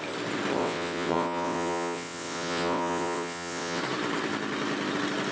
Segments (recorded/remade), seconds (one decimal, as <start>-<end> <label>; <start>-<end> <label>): 0.0-0.6 recorded; 0.6-3.8 remade; 3.8-5.3 recorded